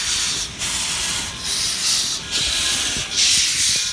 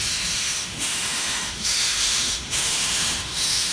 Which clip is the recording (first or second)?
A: first